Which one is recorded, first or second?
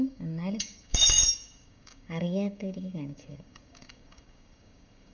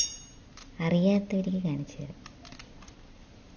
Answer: second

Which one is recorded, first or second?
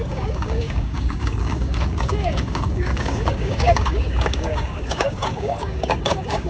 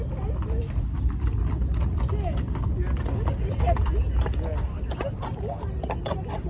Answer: second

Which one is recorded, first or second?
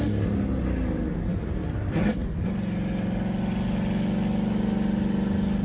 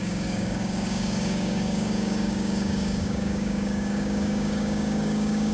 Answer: first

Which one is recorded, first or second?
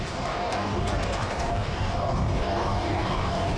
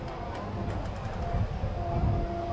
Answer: second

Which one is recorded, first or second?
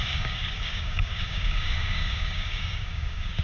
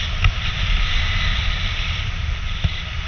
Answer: second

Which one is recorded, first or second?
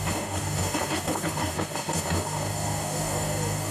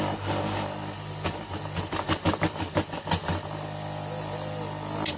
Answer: second